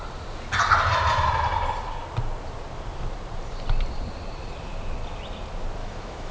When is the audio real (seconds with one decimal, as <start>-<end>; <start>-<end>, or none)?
0.0-5.8